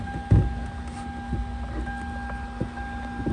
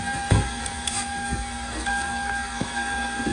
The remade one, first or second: second